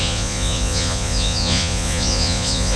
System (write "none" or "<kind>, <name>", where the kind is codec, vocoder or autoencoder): vocoder, Vocos